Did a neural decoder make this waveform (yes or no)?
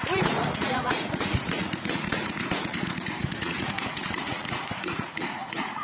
yes